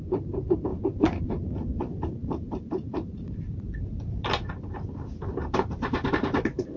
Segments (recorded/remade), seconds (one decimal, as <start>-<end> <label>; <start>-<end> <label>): 0.0-0.7 recorded; 0.7-1.2 remade; 1.2-2.2 recorded; 2.2-6.1 remade; 6.1-6.8 recorded